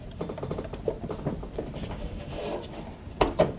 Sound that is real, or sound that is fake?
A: real